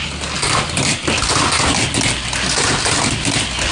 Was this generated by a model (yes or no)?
no